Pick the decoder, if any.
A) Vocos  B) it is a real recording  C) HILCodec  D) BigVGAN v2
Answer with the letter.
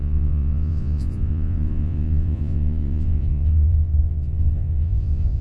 A